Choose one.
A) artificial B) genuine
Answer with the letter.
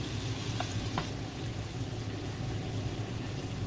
B